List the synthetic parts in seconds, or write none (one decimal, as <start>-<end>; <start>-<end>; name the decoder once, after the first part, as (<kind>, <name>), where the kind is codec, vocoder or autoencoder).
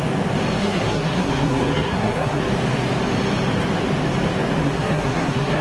0.6-2.4 (codec, SNAC); 4.6-5.6